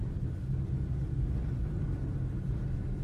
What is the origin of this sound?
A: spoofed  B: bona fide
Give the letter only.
B